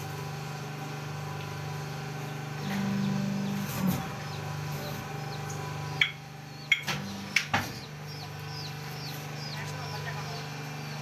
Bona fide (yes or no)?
yes